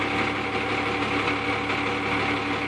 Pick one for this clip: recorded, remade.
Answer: recorded